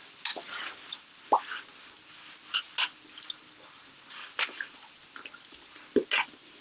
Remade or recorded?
recorded